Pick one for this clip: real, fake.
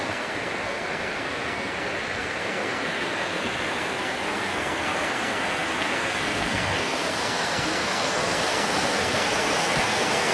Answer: fake